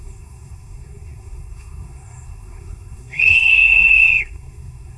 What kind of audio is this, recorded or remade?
remade